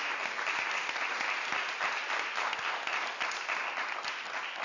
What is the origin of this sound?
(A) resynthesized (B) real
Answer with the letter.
B